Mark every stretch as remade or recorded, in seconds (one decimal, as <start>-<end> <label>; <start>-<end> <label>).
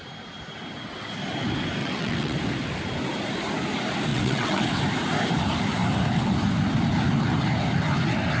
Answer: 0.0-1.8 recorded; 1.8-2.4 remade; 2.4-4.1 recorded; 4.1-4.6 remade; 4.6-8.4 recorded